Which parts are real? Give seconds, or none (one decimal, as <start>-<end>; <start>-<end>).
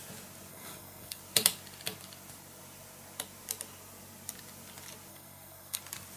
0.0-0.5; 1.2-5.1; 5.8-6.2